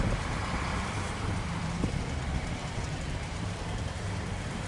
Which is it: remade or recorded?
remade